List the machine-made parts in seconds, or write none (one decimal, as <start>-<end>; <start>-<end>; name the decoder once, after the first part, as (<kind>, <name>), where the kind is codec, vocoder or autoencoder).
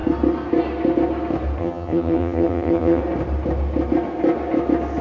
1.6-3.0 (vocoder, HiFi-GAN)